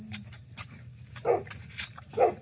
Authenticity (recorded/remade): recorded